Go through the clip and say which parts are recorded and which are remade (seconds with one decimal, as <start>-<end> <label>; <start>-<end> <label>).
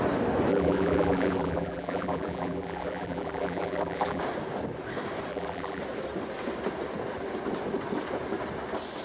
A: 0.0-0.5 recorded; 0.5-4.2 remade; 4.2-5.3 recorded; 5.3-5.8 remade; 5.8-9.0 recorded